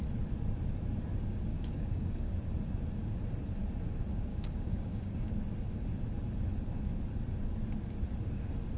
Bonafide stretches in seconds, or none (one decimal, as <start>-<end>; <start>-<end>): 0.0-1.5; 2.3-4.3; 5.3-8.8